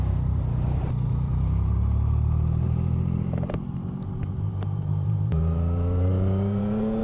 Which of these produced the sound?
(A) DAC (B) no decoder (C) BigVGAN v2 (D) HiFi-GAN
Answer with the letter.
C